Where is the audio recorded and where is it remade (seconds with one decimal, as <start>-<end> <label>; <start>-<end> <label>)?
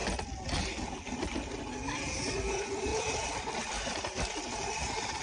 0.0-2.9 recorded; 2.9-4.8 remade; 4.8-5.2 recorded